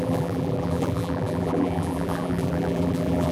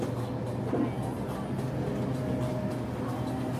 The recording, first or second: second